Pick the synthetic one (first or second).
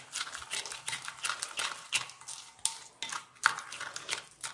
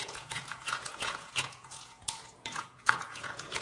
second